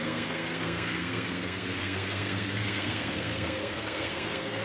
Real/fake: fake